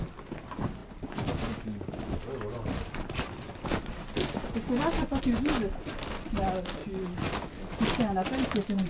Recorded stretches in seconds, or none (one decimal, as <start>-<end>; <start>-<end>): 0.0-8.9